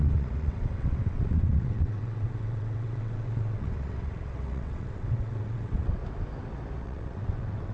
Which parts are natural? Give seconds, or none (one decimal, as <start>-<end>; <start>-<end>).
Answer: 6.0-6.8